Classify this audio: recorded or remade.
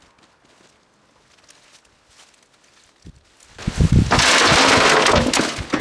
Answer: recorded